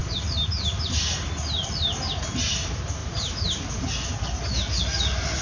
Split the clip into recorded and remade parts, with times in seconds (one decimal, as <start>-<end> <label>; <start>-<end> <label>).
0.0-5.4 recorded